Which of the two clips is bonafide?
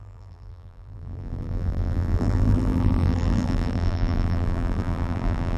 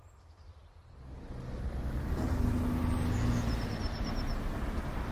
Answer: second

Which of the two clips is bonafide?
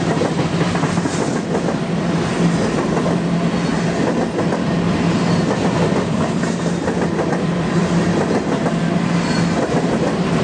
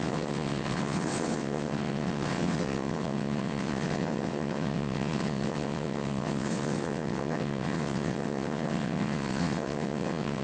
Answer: first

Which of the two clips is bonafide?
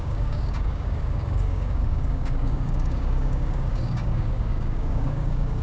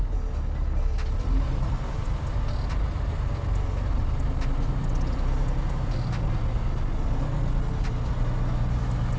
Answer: second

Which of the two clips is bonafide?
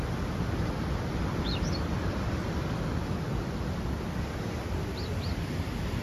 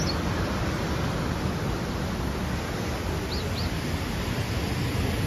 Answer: second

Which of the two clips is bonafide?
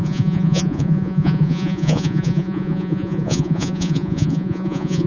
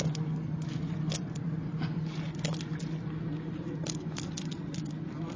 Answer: second